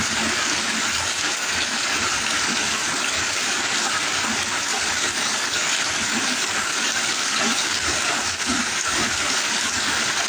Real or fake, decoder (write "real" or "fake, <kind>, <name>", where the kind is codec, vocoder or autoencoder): fake, codec, DAC